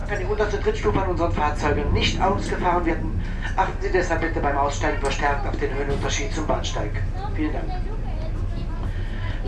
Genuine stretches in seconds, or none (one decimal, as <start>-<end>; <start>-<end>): 0.0-9.5